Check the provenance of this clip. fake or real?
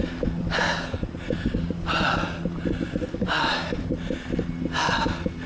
real